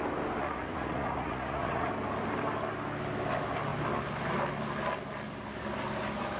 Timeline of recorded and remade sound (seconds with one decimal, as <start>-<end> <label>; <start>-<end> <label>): 0.0-0.4 recorded; 0.4-1.9 remade; 1.9-6.4 recorded